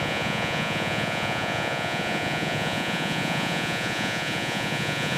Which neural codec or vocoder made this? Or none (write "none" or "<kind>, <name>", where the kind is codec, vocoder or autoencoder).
vocoder, Vocos